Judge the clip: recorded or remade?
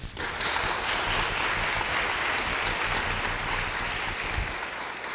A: recorded